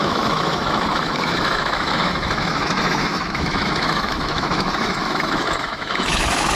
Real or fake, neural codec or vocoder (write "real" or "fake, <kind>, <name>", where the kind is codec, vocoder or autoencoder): fake, autoencoder, DAC-VAE